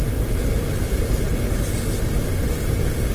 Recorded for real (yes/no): yes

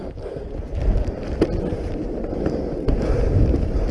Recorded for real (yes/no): yes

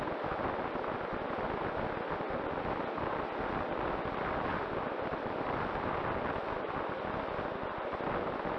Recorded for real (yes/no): yes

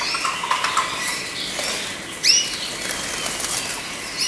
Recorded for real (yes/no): yes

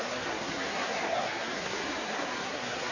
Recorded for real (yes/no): no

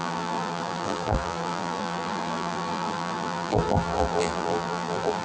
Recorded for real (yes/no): no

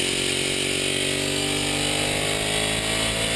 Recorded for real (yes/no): yes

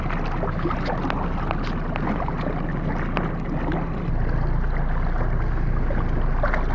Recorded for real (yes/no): yes